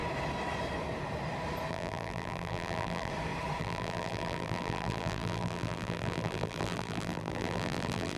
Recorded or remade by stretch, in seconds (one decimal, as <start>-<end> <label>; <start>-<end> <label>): 0.0-1.7 recorded; 1.7-3.1 remade; 3.1-3.6 recorded; 3.6-8.2 remade